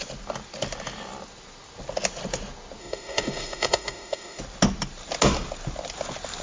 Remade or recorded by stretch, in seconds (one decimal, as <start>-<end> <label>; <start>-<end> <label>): 0.0-2.8 recorded; 2.8-4.4 remade; 4.4-6.4 recorded